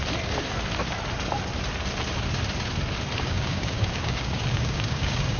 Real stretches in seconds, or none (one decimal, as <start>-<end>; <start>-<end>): 0.0-3.2